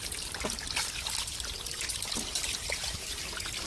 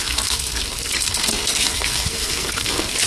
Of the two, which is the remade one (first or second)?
second